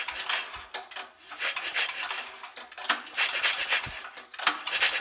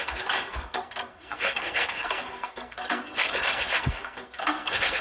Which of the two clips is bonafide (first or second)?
first